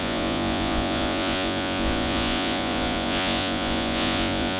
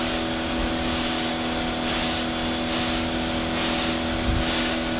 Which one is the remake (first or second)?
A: first